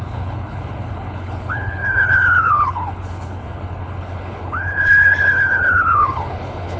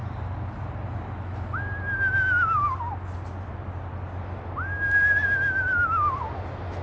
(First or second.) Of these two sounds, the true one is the second